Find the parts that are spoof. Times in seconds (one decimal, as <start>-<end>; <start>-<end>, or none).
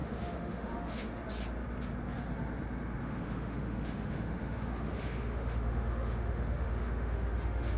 0.0-1.2; 3.0-7.8